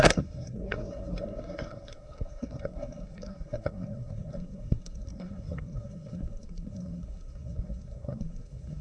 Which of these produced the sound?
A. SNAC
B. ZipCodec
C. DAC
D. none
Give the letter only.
A